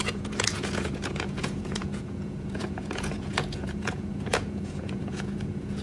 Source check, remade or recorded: remade